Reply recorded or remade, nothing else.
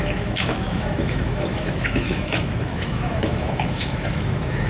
remade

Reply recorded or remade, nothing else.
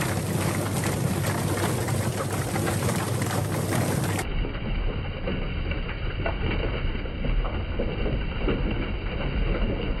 recorded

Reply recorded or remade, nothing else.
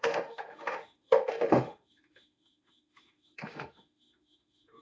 remade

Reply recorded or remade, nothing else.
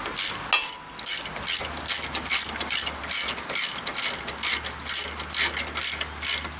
recorded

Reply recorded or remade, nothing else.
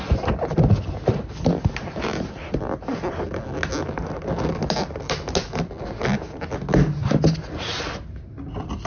recorded